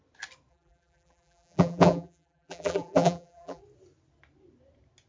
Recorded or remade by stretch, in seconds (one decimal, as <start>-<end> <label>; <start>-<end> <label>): 0.0-0.5 recorded; 0.5-3.6 remade; 3.6-5.1 recorded